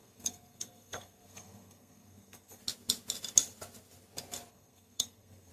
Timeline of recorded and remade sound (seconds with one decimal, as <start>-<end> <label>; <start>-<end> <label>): 0.0-2.6 remade; 2.6-4.5 recorded; 4.5-5.5 remade